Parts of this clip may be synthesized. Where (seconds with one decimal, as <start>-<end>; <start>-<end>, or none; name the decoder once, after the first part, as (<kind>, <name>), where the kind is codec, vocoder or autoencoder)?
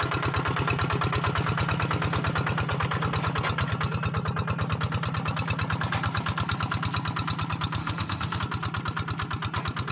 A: 7.8-8.4 (autoencoder, DAC-VAE)